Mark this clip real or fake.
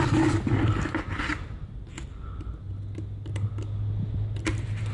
real